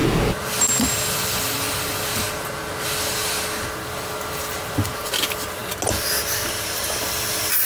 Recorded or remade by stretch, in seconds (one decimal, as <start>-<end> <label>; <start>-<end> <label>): 0.0-0.9 recorded; 0.9-2.1 remade; 2.1-3.7 recorded; 3.7-5.6 remade; 5.6-7.0 recorded; 7.0-7.6 remade